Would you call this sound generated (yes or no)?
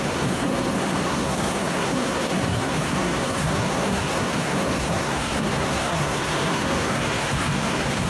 yes